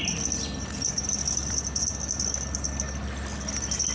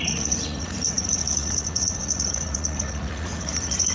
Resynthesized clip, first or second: second